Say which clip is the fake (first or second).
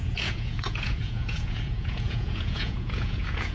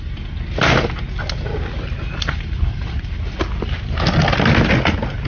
first